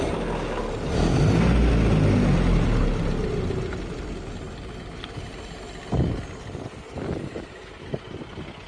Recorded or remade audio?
recorded